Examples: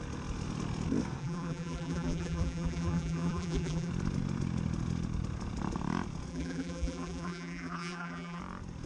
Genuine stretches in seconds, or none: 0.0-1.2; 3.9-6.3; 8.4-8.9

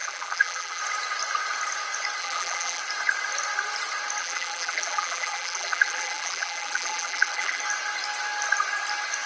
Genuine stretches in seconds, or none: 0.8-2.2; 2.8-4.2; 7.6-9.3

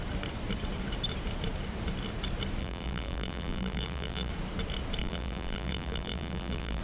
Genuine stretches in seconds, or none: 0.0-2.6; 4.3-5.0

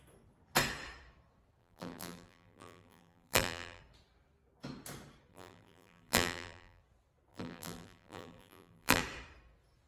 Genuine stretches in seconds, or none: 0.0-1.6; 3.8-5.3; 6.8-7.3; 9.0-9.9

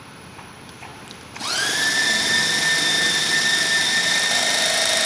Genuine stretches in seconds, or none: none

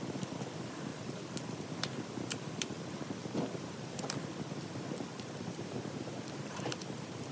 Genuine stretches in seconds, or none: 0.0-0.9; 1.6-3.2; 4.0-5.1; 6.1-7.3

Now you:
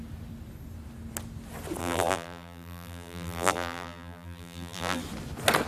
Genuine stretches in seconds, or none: 0.0-1.8; 5.0-5.7